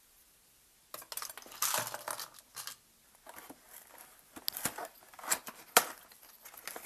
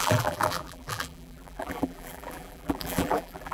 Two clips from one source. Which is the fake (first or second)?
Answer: second